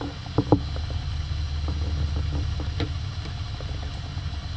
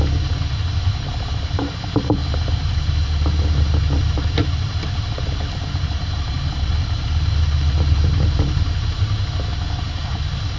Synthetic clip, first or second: second